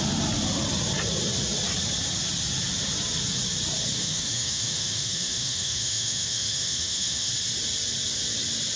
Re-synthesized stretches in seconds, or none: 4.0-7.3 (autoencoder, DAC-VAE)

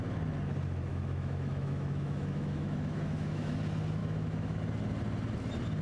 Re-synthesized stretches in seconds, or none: 0.9-3.5 (autoencoder, DAC-VAE); 4.0-4.6

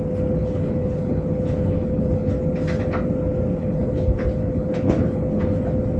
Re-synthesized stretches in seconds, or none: 0.4-2.3 (codec, HILCodec); 3.6-5.4

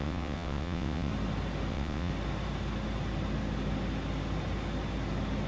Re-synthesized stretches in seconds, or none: 0.0-1.1 (vocoder, WaveNeXt); 1.7-2.1